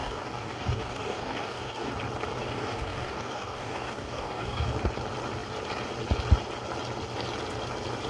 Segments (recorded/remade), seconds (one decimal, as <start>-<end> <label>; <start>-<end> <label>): 0.0-1.9 remade; 1.9-2.4 recorded; 2.4-4.7 remade; 4.7-8.1 recorded